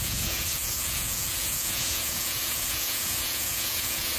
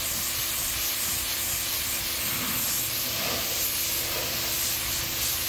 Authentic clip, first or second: second